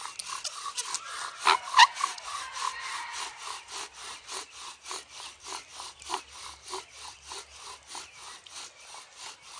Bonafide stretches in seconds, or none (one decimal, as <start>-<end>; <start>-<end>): 0.0-2.1; 4.5-9.6